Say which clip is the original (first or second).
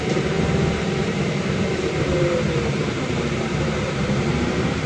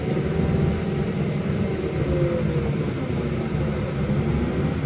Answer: second